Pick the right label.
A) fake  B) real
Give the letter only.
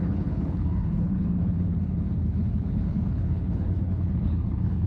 A